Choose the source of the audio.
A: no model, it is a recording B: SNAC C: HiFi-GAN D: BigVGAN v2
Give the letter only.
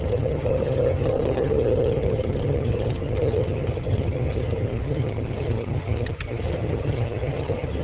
C